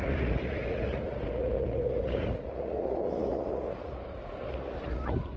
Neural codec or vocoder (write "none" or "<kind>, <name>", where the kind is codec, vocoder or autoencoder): vocoder, Vocos